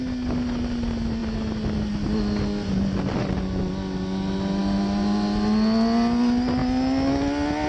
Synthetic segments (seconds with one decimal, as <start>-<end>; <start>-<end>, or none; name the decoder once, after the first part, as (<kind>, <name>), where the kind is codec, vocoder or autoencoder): none

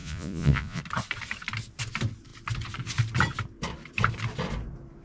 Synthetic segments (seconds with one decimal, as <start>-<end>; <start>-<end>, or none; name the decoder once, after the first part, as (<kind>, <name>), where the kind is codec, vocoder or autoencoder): 0.0-0.8 (vocoder, Vocos)